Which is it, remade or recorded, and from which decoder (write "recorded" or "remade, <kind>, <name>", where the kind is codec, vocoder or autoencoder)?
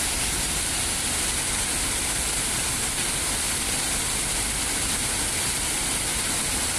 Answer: recorded